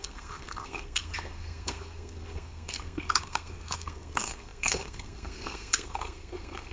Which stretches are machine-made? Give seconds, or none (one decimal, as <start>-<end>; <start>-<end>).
0.0-6.7

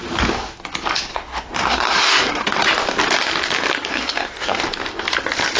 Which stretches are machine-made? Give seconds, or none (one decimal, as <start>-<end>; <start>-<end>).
1.1-2.5; 3.9-4.6

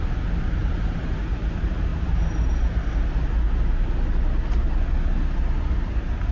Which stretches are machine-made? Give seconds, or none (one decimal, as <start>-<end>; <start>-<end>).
0.6-1.2

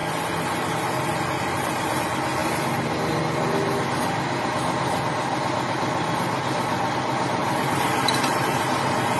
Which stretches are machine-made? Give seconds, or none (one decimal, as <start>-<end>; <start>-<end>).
7.4-8.6

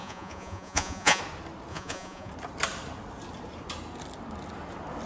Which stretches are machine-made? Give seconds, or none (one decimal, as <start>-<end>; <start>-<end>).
0.0-1.2; 1.7-2.3

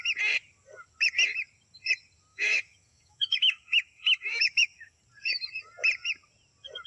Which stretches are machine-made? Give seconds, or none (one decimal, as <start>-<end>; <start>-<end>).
2.3-5.0

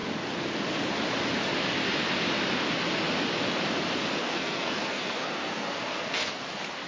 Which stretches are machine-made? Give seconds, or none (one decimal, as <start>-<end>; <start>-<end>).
4.2-6.4